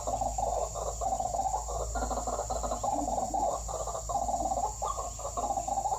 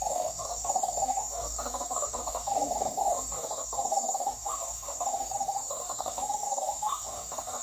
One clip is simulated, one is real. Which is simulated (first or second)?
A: second